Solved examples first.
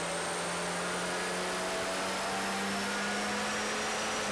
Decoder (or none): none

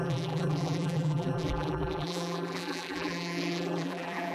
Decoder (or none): vocoder, BigVGAN v2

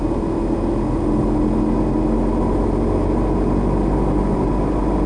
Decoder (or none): none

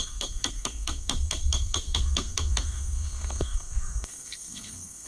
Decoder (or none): codec, SNAC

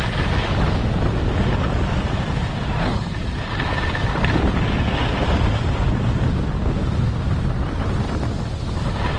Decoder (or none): none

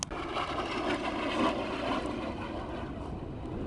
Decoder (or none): none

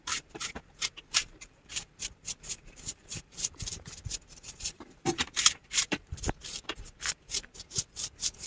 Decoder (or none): vocoder, BigVGAN v2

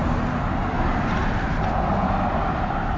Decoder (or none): none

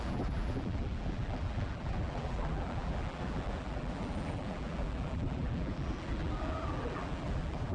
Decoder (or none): vocoder, BigVGAN v2